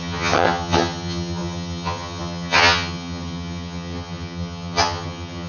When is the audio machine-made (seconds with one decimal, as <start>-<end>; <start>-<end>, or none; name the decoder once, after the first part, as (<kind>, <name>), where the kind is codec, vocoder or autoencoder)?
0.0-5.5 (vocoder, HiFi-GAN)